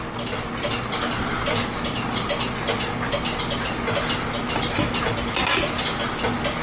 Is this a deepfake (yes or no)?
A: no